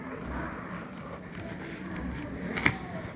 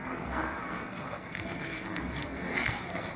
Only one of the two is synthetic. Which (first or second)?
second